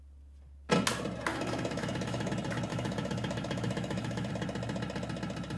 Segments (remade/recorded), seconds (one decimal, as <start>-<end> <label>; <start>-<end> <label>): 0.0-1.3 recorded; 1.3-2.3 remade; 2.3-2.7 recorded; 2.7-4.3 remade; 4.3-5.6 recorded